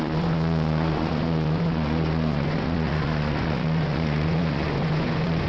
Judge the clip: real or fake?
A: fake